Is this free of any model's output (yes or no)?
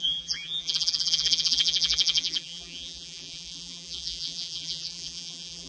no